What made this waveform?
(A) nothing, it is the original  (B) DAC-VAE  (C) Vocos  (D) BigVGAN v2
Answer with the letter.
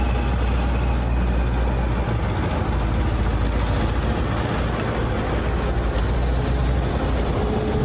A